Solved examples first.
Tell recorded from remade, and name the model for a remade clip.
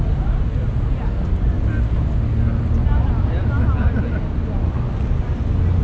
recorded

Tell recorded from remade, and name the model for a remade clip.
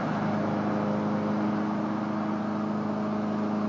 recorded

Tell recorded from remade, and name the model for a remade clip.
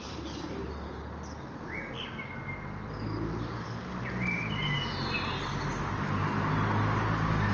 recorded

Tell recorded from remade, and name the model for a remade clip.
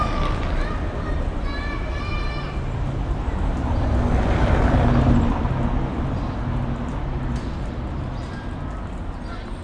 recorded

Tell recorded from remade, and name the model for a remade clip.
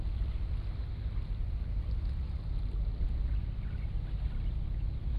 recorded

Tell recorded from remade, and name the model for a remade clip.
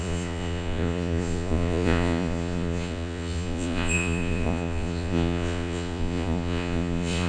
remade, vocoder, Vocos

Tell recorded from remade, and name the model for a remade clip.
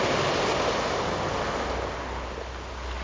recorded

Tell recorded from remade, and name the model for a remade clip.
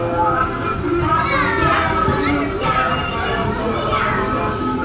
recorded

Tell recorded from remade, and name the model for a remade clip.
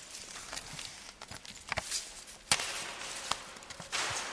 recorded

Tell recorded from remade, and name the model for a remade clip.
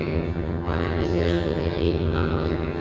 remade, vocoder, HiFi-GAN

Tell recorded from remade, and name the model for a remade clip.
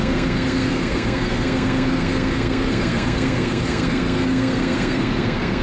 remade, codec, SNAC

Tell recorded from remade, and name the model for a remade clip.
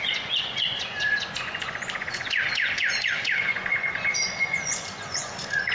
remade, vocoder, Vocos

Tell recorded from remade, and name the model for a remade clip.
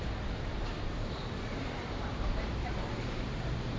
remade, vocoder, BigVGAN v2